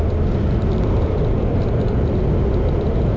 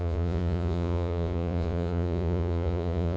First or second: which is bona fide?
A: first